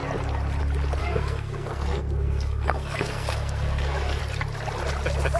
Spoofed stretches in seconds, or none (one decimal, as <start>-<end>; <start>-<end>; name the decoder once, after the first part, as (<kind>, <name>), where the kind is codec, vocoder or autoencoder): 1.0-4.2 (codec, SNAC)